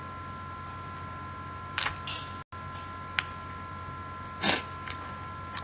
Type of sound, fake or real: real